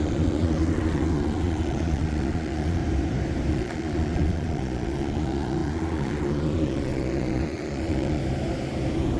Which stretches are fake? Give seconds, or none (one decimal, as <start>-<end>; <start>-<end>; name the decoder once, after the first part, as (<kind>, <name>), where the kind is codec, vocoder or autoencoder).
0.0-2.8 (vocoder, Vocos); 3.5-8.2